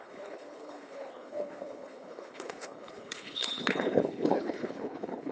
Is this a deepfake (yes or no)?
yes